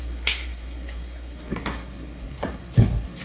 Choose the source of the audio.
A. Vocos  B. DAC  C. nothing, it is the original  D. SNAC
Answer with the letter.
D